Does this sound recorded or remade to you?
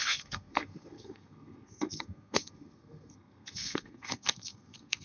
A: remade